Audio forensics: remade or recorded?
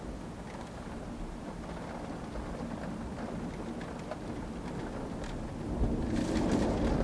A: recorded